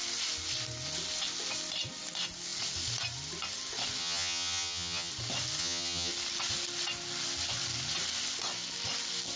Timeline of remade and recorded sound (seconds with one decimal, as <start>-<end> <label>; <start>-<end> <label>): 0.0-4.0 recorded; 4.0-5.1 remade; 5.1-5.6 recorded; 5.6-6.1 remade; 6.1-9.4 recorded